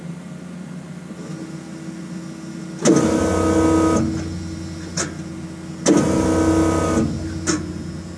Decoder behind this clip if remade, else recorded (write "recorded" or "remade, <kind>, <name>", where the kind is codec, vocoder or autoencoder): recorded